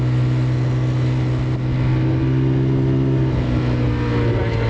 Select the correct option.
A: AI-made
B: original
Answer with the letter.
B